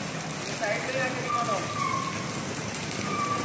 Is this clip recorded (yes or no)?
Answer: yes